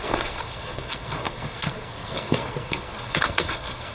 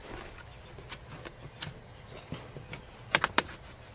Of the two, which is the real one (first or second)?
second